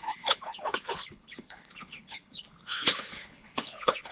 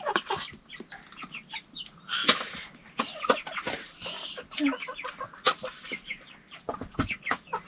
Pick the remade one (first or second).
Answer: first